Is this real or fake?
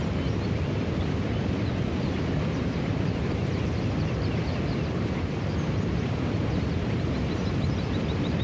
real